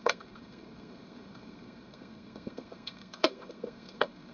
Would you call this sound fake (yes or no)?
yes